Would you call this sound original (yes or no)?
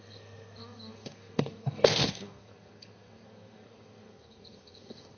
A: no